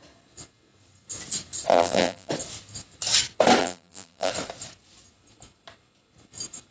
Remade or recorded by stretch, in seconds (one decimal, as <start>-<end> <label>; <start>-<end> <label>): 0.0-1.7 recorded; 1.7-2.3 remade; 2.3-3.6 recorded; 3.6-4.3 remade; 4.3-6.7 recorded